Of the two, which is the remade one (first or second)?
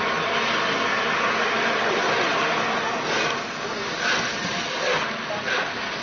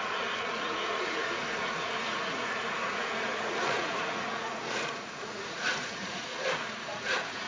second